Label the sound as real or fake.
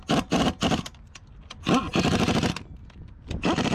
real